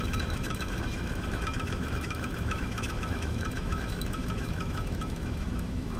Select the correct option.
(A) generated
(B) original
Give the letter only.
A